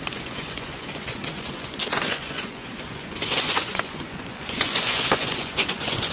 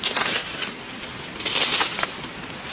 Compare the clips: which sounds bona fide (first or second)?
second